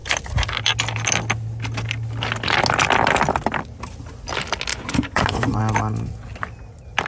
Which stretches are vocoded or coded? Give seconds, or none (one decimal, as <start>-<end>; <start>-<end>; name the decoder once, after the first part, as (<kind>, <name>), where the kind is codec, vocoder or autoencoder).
4.7-5.6 (vocoder, Vocos)